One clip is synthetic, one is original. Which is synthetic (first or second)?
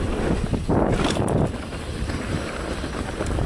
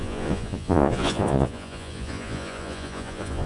second